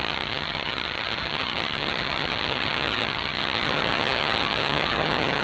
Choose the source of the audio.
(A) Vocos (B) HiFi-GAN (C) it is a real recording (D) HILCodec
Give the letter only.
B